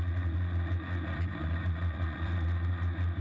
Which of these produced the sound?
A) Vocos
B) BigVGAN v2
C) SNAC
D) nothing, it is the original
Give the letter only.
A